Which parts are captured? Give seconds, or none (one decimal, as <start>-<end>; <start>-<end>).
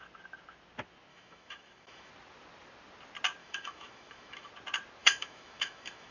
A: 0.0-1.1; 2.1-3.4; 4.5-5.0